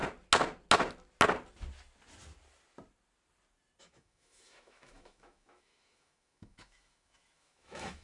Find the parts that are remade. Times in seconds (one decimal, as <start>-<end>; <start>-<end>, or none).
3.8-8.0